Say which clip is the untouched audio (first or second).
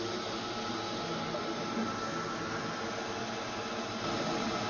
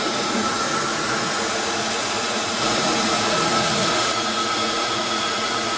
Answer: first